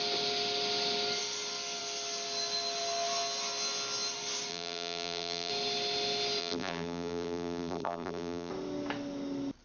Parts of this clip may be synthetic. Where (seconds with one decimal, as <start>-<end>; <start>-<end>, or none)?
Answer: 4.5-5.5; 6.4-8.5